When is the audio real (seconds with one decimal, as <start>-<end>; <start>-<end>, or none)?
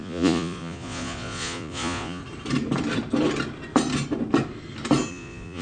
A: 2.2-5.1